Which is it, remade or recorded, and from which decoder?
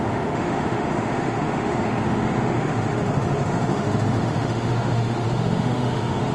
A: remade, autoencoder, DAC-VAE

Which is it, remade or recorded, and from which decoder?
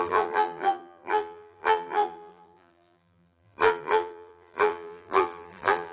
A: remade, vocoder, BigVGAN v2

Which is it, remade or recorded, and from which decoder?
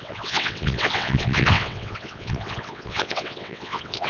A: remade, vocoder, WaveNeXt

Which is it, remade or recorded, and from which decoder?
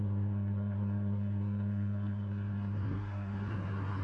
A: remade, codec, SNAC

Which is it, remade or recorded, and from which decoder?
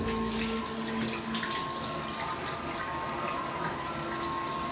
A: recorded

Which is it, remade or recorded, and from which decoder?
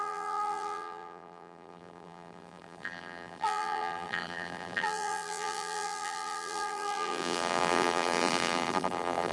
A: remade, vocoder, BigVGAN v2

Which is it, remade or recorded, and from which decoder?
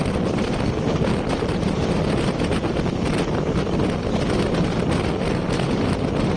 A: recorded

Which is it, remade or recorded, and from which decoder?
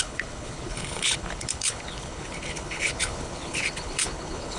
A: remade, codec, HILCodec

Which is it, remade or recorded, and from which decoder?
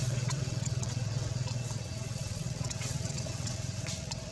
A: remade, vocoder, WaveNeXt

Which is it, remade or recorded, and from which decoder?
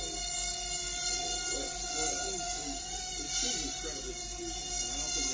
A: recorded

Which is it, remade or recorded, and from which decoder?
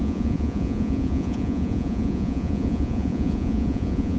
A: remade, vocoder, Vocos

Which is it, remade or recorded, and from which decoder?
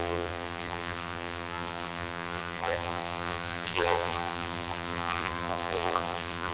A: remade, vocoder, BigVGAN v2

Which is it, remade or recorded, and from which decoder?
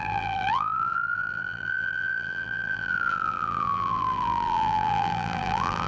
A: remade, vocoder, BigVGAN v2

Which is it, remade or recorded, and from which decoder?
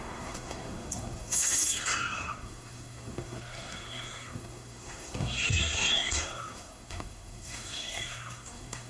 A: remade, codec, SNAC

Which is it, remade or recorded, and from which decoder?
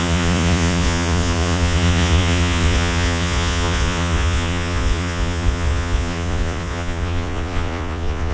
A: remade, vocoder, Vocos